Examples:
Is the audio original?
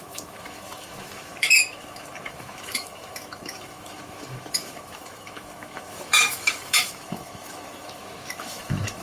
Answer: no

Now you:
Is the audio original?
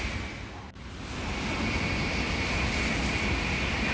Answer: yes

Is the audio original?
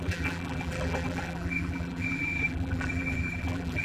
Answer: no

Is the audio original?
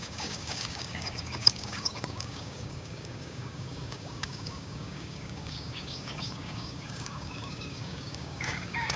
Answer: no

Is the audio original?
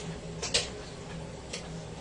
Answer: yes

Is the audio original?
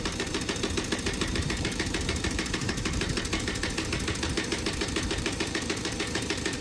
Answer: no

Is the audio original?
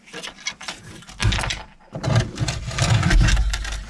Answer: yes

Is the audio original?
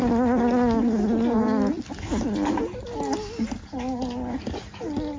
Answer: yes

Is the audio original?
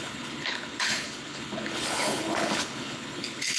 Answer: no